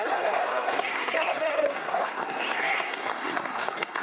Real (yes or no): no